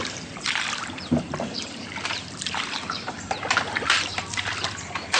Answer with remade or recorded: recorded